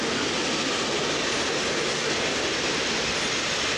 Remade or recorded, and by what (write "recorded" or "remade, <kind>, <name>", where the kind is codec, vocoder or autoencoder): recorded